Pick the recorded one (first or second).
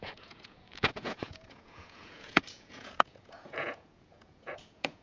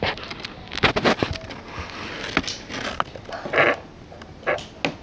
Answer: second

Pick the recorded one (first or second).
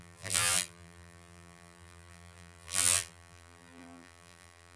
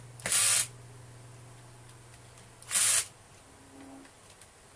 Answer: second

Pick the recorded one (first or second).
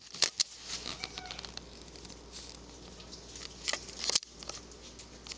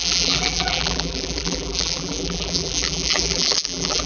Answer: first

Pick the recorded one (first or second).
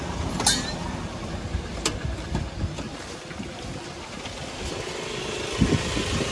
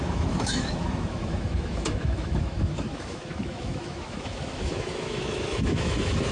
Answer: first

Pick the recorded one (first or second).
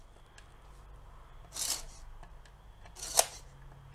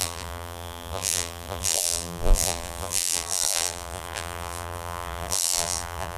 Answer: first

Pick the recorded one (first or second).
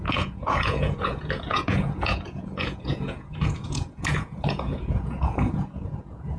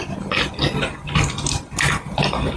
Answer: second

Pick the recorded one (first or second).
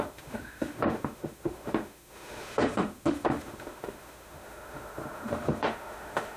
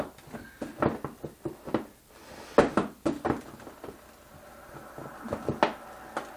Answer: second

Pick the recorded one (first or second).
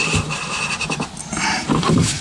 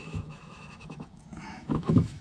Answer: first